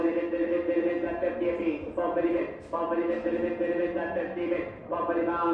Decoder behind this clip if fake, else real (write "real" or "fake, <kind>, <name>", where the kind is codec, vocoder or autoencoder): real